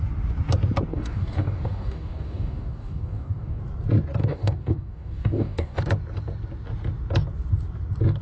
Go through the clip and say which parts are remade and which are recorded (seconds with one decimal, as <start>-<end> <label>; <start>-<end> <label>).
0.0-0.9 recorded; 0.9-3.6 remade; 3.6-4.2 recorded; 4.2-5.8 remade; 5.8-8.2 recorded